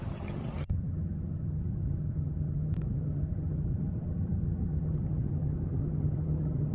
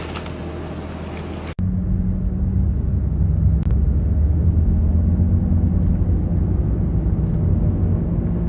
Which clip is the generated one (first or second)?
first